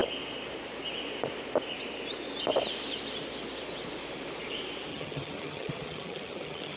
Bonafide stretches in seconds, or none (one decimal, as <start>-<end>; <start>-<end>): 0.0-4.9